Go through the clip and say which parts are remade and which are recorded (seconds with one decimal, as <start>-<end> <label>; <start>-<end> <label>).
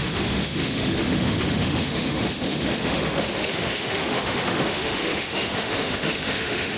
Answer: 0.0-6.8 remade